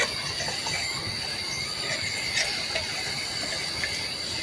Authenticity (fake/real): real